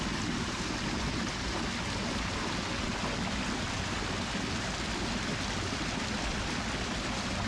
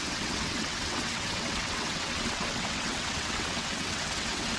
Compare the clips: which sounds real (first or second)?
first